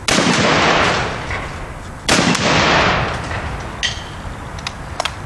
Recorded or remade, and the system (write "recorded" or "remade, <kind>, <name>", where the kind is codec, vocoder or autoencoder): recorded